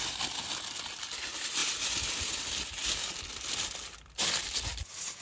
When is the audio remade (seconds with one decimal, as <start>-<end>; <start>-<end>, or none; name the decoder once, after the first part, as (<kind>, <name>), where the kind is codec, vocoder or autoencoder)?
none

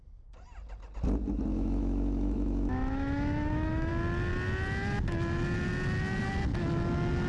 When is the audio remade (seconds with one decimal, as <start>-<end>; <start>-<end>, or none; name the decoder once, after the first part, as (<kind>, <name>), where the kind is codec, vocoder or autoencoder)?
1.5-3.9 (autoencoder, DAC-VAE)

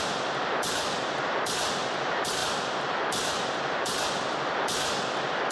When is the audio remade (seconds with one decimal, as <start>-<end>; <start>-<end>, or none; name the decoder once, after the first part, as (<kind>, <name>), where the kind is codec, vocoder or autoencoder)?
none